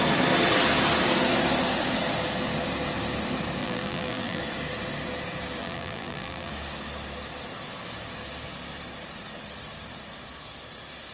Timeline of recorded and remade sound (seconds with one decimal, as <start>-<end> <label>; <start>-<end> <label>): 0.0-3.6 recorded; 3.6-4.4 remade; 4.4-5.6 recorded; 5.6-6.5 remade; 6.5-11.1 recorded